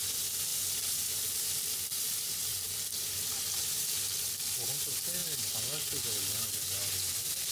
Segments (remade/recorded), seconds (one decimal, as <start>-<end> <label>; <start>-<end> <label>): 0.0-0.5 recorded; 0.5-4.3 remade; 4.3-7.5 recorded